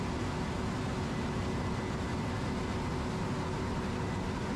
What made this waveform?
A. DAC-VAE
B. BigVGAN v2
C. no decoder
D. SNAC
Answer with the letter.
C